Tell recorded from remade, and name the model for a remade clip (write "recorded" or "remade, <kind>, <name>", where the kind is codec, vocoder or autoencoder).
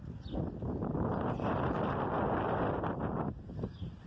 recorded